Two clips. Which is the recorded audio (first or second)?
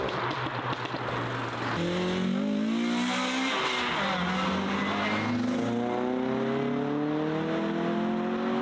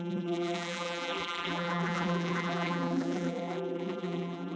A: first